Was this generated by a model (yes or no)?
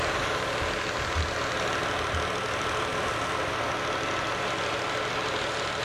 no